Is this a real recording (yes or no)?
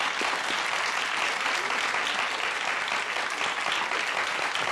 yes